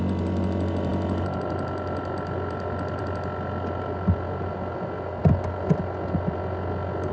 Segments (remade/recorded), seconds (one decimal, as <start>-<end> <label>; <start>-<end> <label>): 0.0-7.1 recorded